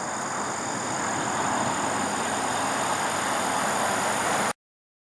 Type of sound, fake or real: real